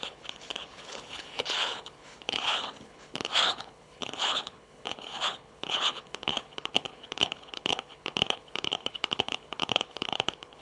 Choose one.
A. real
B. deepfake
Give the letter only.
B